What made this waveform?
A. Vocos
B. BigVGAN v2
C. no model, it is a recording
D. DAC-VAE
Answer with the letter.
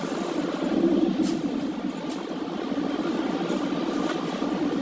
C